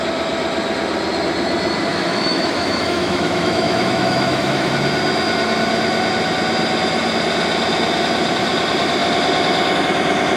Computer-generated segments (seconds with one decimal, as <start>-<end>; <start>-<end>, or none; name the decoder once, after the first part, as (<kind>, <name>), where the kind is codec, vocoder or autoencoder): 1.9-4.7 (autoencoder, DAC-VAE)